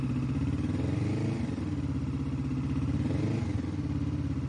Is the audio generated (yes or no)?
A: no